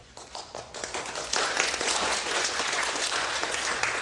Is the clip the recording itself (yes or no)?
no